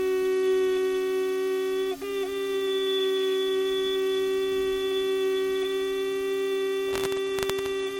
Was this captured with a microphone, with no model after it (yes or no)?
yes